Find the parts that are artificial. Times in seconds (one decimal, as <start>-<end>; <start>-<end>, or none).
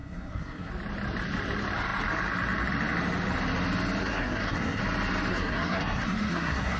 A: 0.0-0.7; 4.0-4.8; 5.3-6.8